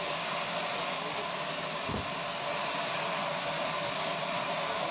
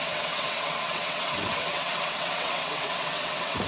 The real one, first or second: first